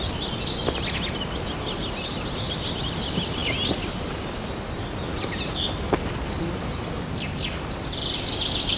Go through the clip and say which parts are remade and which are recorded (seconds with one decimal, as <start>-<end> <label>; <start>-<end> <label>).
0.0-8.8 recorded